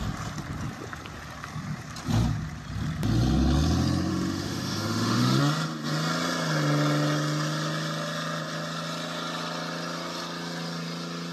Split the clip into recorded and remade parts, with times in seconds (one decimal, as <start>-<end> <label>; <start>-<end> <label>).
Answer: 0.0-4.1 recorded; 4.1-5.4 remade; 5.4-11.3 recorded

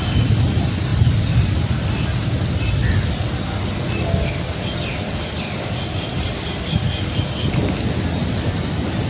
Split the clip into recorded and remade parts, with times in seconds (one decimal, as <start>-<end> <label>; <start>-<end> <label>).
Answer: 0.0-9.1 recorded

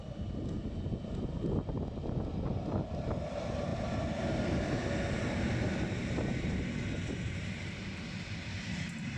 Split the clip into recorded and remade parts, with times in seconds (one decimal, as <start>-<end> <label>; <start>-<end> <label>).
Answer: 0.0-9.2 recorded

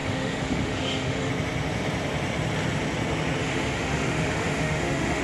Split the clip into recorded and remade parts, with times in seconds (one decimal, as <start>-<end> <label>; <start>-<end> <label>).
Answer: 0.0-1.3 remade; 1.3-3.4 recorded; 3.4-5.2 remade

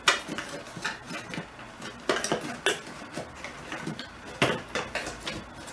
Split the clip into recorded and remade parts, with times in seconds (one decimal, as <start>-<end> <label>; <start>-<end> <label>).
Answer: 0.0-5.7 recorded